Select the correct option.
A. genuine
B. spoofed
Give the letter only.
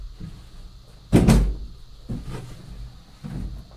A